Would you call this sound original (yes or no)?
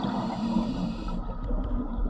yes